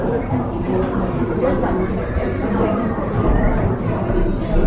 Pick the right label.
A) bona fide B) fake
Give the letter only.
B